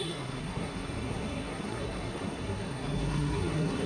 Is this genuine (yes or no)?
no